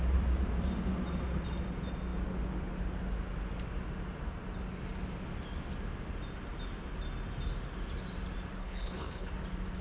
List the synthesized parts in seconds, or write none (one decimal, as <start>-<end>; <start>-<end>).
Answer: 8.6-9.3